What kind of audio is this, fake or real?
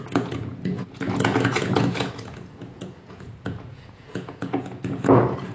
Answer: fake